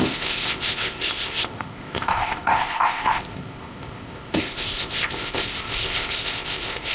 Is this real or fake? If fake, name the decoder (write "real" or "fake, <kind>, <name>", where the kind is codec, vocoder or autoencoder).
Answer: fake, codec, ZipCodec